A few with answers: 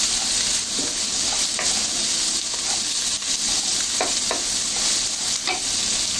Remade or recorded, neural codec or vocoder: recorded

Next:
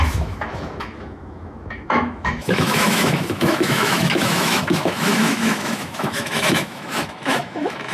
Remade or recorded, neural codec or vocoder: remade, autoencoder, DAC-VAE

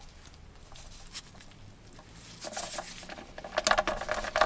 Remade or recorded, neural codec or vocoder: recorded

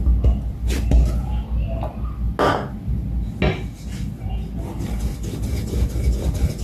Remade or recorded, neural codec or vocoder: recorded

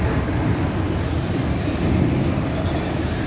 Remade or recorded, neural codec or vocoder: recorded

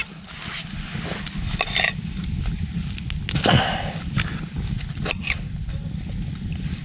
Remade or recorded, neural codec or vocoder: recorded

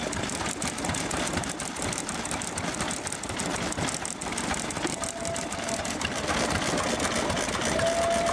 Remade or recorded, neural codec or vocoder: recorded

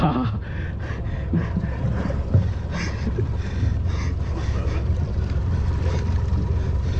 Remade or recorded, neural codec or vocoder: recorded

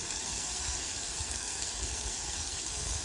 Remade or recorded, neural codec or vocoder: remade, codec, SNAC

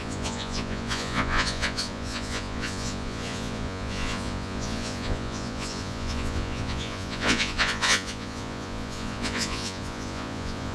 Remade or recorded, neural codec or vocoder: remade, vocoder, Vocos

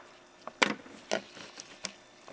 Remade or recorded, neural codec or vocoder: recorded